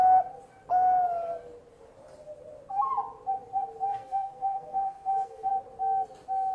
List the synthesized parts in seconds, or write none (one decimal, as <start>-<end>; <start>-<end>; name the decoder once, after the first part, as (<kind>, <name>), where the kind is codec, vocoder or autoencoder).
3.9-5.5 (codec, SNAC)